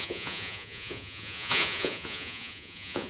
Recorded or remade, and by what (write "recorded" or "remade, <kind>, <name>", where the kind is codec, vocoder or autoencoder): remade, vocoder, Vocos